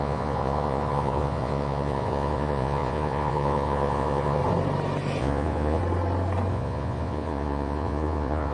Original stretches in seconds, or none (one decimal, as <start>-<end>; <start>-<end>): 4.4-5.2; 5.8-6.5